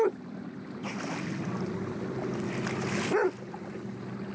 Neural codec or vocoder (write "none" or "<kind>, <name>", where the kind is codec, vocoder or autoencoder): none